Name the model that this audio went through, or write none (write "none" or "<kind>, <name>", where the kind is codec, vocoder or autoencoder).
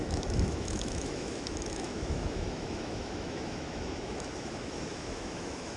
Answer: autoencoder, DAC-VAE